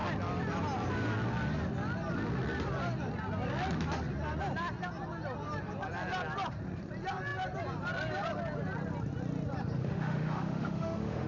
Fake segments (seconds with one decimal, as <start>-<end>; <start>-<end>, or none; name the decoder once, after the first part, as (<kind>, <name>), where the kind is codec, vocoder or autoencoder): 9.8-11.3 (autoencoder, DAC-VAE)